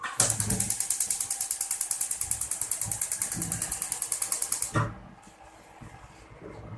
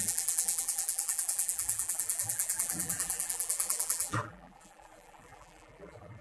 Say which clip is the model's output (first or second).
second